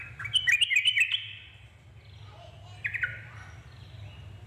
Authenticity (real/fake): real